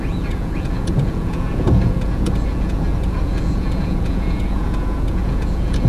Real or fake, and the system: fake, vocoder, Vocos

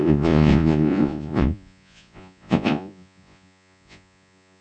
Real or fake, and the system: fake, vocoder, Vocos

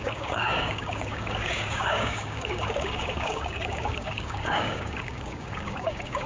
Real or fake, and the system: fake, codec, DAC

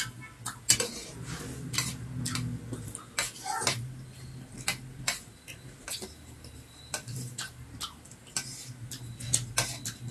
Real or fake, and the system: real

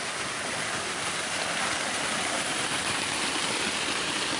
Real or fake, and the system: real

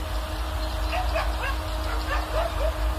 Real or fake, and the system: real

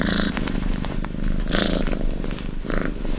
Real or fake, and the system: fake, vocoder, BigVGAN v2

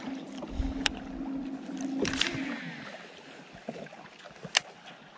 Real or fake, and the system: real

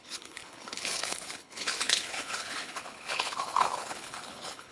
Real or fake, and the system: fake, codec, HILCodec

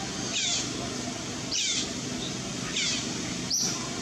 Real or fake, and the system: real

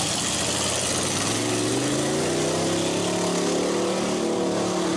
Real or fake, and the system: real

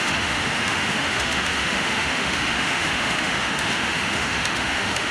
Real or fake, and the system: fake, autoencoder, DAC-VAE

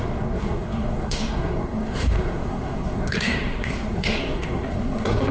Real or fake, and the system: fake, codec, SNAC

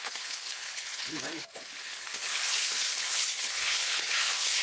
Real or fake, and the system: fake, codec, HILCodec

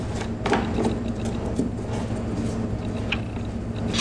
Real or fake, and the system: real